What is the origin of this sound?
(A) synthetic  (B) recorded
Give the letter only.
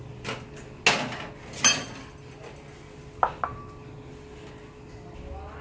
B